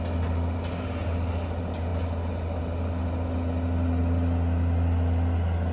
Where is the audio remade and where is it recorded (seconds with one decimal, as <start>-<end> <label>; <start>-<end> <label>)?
0.0-5.7 recorded